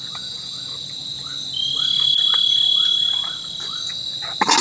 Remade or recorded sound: recorded